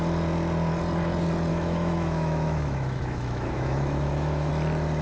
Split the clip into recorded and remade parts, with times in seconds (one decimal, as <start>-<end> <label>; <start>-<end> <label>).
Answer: 0.0-1.5 recorded; 1.5-4.5 remade; 4.5-5.0 recorded